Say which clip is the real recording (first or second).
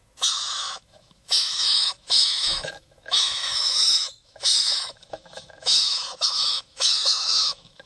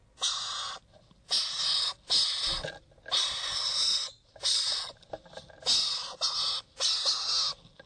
second